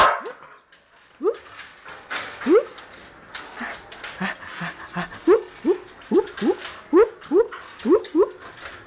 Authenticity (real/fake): real